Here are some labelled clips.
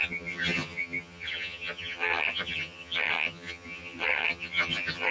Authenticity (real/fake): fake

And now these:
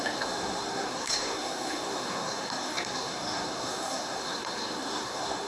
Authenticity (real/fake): fake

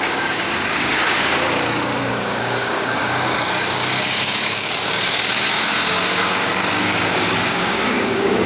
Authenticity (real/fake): fake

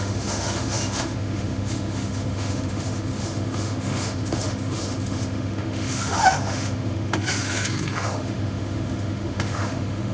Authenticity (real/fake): fake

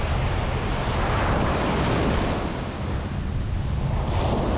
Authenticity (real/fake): real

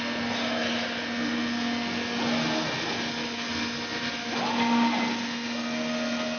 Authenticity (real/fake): real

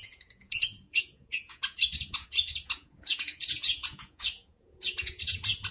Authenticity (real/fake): fake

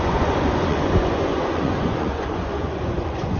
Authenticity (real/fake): fake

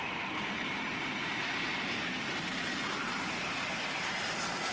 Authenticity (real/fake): fake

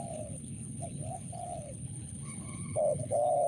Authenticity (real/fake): fake